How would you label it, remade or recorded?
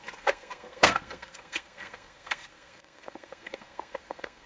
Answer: remade